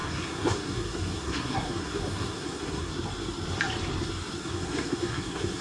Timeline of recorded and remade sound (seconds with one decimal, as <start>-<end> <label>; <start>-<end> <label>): 0.0-2.9 remade; 2.9-4.4 recorded; 4.4-5.6 remade